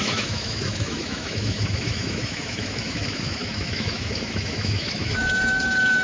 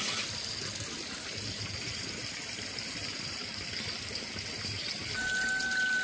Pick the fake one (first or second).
first